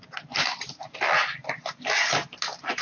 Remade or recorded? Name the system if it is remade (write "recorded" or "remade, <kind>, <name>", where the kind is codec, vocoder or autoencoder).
recorded